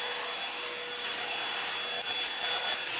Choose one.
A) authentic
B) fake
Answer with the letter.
A